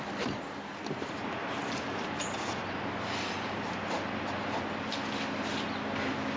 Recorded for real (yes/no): yes